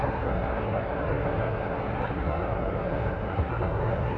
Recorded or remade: remade